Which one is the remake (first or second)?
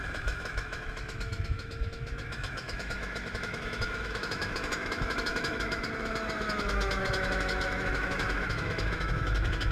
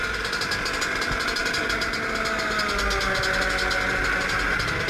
first